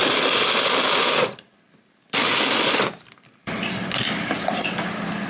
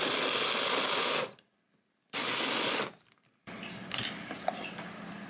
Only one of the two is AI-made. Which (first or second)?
first